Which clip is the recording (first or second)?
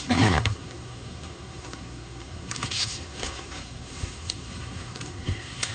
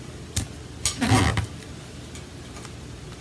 second